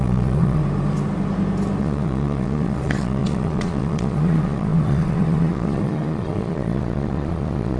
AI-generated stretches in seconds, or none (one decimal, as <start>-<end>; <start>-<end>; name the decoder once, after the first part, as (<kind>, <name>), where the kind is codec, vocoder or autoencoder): 0.0-0.6 (vocoder, Vocos); 1.8-7.8